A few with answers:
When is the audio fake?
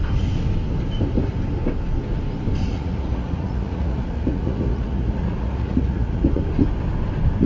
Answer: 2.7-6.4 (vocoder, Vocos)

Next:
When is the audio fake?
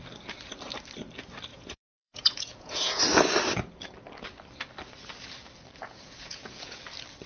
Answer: 1.5-3.0 (vocoder, Vocos); 5.8-6.8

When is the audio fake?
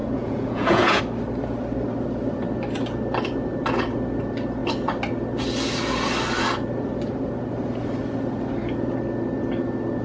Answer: 0.0-1.0 (vocoder, Vocos)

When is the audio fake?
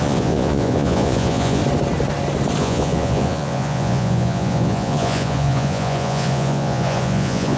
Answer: 0.0-1.6 (vocoder, Vocos); 2.6-7.6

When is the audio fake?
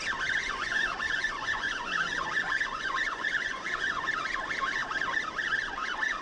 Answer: 0.4-4.1 (vocoder, Vocos)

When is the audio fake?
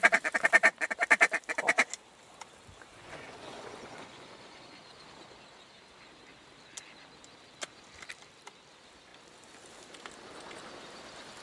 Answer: 2.9-4.8 (vocoder, Vocos)